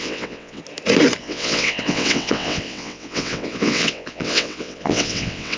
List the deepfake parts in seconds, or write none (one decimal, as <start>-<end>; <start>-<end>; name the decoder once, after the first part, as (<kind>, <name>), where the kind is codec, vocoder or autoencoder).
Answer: 0.0-0.6 (vocoder, WaveNeXt); 1.2-5.6